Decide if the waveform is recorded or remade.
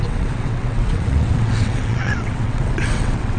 remade